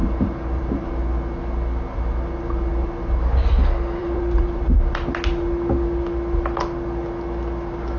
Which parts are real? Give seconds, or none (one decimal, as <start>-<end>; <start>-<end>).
0.7-4.0; 4.8-8.0